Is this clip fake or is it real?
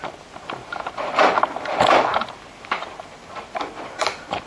real